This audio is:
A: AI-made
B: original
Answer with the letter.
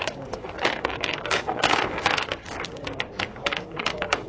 A